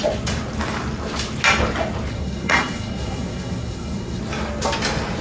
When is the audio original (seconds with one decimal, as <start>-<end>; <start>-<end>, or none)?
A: 0.0-2.1; 4.2-5.2